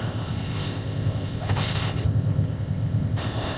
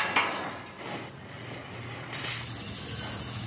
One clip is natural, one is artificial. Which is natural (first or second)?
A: second